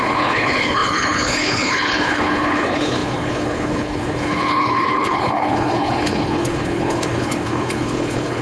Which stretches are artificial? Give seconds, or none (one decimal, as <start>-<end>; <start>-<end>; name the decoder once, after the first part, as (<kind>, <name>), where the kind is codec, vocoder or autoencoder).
0.0-8.4 (codec, HILCodec)

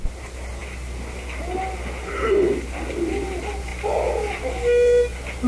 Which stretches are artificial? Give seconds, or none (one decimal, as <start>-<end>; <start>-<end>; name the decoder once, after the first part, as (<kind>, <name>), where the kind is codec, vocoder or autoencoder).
none

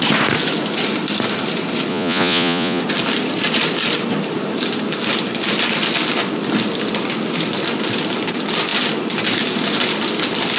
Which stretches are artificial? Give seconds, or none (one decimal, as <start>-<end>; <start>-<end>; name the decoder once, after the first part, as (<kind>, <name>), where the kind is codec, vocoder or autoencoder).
1.9-2.8 (vocoder, Vocos)

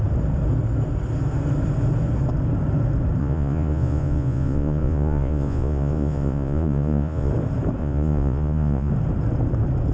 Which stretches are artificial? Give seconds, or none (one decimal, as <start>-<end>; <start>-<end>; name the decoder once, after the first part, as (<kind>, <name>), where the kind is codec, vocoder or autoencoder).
3.2-7.3 (vocoder, Vocos); 7.8-8.9